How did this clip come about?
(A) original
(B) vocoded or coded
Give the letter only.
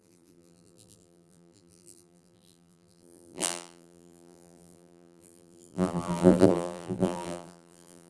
B